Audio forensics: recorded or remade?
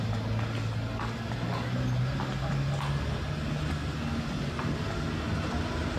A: recorded